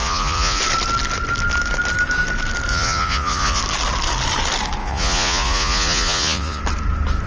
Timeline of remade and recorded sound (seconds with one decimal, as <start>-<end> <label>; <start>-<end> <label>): 0.0-0.6 remade; 0.6-2.7 recorded; 2.7-3.6 remade; 3.6-4.8 recorded; 4.8-6.6 remade; 6.6-7.3 recorded